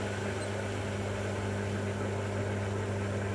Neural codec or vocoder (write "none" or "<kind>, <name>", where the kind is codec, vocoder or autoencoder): none